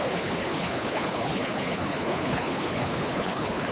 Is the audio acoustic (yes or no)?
no